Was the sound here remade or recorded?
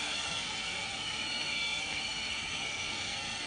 remade